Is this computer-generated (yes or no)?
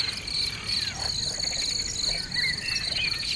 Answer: no